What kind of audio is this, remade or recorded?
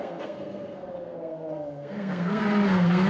remade